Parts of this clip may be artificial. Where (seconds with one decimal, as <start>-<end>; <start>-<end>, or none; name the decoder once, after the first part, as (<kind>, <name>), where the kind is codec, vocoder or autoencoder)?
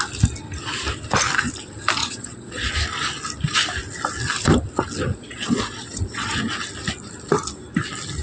2.0-2.7 (vocoder, Vocos); 5.1-6.3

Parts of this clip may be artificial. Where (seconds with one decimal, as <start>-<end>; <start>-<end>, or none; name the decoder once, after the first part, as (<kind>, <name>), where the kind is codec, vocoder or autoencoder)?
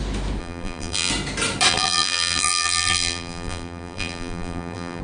0.4-1.1 (vocoder, BigVGAN v2); 1.7-5.0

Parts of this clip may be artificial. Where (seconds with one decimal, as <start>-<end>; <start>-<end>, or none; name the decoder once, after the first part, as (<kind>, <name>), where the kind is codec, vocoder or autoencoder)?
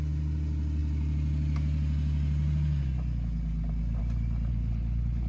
4.5-5.3 (codec, HILCodec)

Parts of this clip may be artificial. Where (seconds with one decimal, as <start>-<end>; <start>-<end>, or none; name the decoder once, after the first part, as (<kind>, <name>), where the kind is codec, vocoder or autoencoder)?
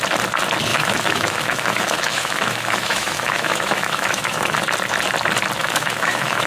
0.7-4.6 (autoencoder, DAC-VAE); 5.6-6.5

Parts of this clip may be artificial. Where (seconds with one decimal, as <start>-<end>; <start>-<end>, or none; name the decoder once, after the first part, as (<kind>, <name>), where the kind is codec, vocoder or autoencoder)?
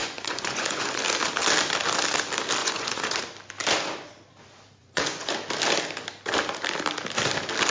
0.0-1.0 (vocoder, Vocos); 2.6-3.2; 4.8-5.3